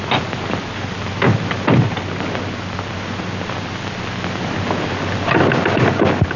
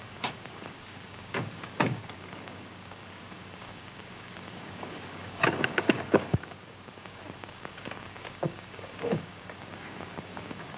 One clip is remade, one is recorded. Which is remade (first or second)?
second